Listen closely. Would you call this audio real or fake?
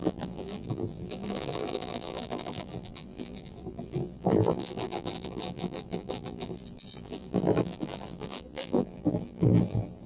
fake